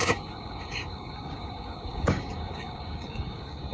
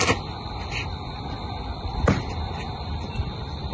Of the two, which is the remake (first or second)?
first